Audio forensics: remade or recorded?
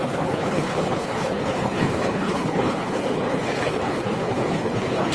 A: remade